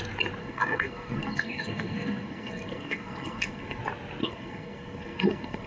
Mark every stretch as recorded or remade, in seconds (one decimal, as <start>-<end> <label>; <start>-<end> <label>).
0.0-0.4 recorded; 0.4-3.8 remade; 3.8-4.2 recorded; 4.2-5.7 remade